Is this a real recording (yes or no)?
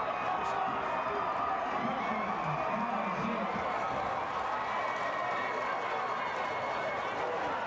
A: yes